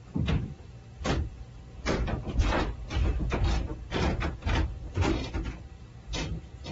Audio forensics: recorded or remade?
remade